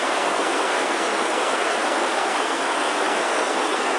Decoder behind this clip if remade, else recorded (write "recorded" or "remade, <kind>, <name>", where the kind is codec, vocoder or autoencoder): remade, codec, SNAC